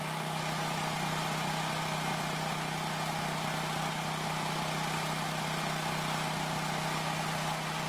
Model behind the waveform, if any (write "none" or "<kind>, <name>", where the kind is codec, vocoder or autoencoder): none